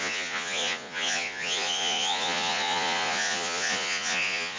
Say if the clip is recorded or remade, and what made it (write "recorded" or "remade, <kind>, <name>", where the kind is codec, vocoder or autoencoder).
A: remade, vocoder, Vocos